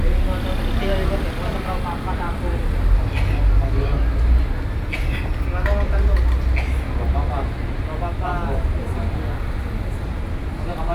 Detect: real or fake real